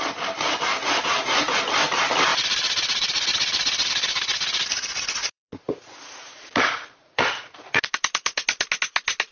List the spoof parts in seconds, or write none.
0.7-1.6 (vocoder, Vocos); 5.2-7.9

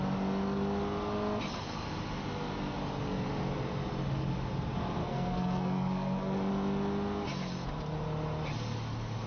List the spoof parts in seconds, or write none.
5.0-6.5 (codec, SNAC)

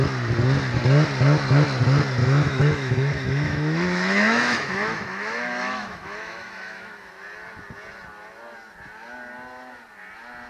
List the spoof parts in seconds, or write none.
2.2-7.1 (autoencoder, DAC-VAE)

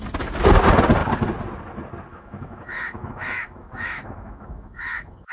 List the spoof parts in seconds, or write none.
2.1-5.3 (autoencoder, DAC-VAE)